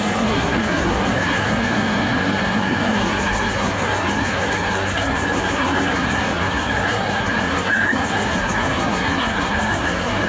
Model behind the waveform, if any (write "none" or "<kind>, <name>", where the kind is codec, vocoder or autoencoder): codec, SNAC